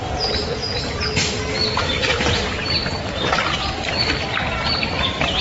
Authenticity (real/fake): real